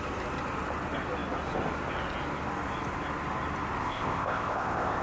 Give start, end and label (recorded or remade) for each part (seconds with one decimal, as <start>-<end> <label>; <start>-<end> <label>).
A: 0.0-3.8 recorded; 3.8-5.0 remade